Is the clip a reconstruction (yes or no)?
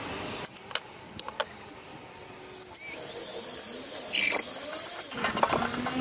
no